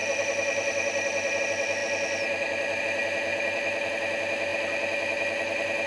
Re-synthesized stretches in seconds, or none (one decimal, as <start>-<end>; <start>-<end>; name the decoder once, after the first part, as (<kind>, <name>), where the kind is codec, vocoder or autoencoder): 0.0-1.4 (vocoder, BigVGAN v2); 3.3-3.9